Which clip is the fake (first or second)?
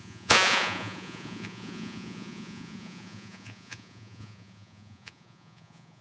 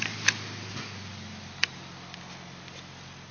first